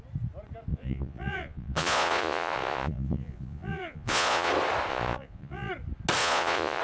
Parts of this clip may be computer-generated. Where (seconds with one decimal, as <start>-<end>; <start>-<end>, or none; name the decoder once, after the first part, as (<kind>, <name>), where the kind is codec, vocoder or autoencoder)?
0.7-4.5 (vocoder, Vocos); 4.9-5.7; 6.2-6.8